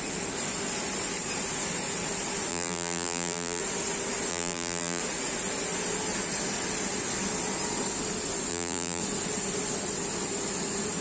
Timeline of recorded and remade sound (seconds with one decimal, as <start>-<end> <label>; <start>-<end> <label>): 0.0-2.5 recorded; 2.5-3.6 remade; 3.6-4.3 recorded; 4.3-5.0 remade; 5.0-8.5 recorded; 8.5-9.0 remade; 9.0-11.0 recorded